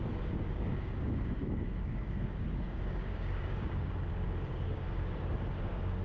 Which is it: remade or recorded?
remade